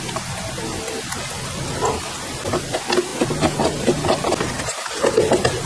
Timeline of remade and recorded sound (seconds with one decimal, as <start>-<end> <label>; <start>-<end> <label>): 0.0-5.7 recorded